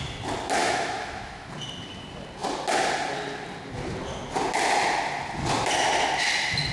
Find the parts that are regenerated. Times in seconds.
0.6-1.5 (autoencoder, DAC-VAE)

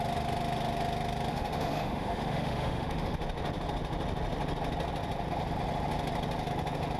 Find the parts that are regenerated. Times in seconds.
1.3-3.2 (autoencoder, DAC-VAE)